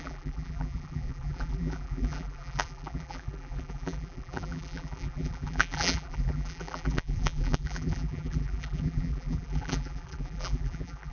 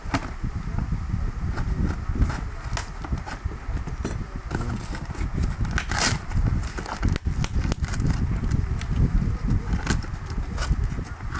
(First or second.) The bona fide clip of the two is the second